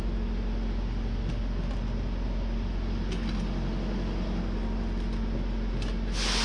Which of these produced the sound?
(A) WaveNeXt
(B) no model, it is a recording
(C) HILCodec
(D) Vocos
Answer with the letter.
B